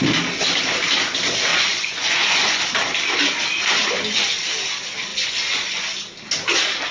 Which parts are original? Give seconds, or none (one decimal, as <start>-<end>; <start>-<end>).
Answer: 0.0-1.5; 2.6-5.1; 5.8-6.9